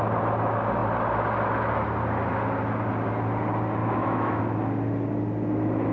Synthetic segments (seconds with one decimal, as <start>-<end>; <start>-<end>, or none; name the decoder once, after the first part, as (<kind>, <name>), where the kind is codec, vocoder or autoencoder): 3.8-4.4 (autoencoder, DAC-VAE)

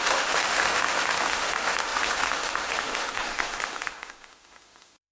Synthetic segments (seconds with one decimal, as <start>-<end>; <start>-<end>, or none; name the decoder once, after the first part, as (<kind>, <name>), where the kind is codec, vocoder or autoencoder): 0.0-5.1 (autoencoder, DAC-VAE)

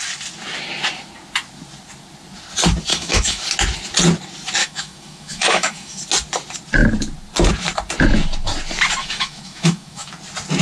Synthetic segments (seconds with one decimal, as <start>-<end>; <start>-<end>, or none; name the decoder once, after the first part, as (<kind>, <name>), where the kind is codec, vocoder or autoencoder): 2.9-3.4 (autoencoder, DAC-VAE); 4.6-6.0; 9.0-10.1

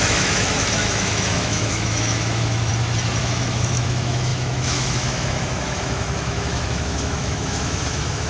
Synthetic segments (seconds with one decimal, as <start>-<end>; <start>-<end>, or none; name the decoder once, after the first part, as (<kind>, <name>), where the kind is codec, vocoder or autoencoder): 0.0-2.7 (autoencoder, DAC-VAE); 3.2-8.3

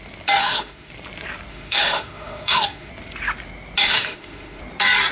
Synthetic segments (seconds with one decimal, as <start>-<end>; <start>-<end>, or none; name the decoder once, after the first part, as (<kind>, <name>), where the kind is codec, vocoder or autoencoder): 0.4-0.9 (autoencoder, DAC-VAE); 1.5-2.9; 3.8-4.6

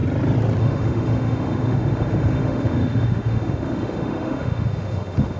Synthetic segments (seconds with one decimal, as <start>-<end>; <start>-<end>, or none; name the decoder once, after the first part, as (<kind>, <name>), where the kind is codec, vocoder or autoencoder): 0.6-5.4 (autoencoder, DAC-VAE)